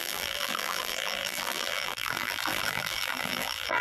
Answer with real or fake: fake